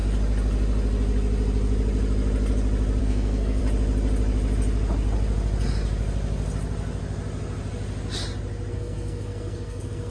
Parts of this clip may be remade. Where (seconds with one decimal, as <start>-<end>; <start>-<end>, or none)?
3.0-3.6; 8.7-10.1